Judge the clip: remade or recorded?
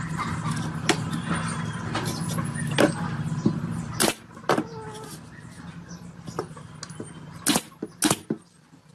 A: recorded